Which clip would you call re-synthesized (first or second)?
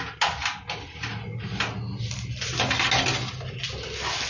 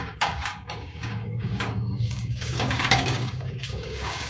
second